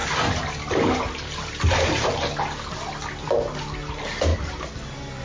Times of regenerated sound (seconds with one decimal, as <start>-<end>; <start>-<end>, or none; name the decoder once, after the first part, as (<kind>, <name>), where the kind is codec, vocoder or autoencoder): none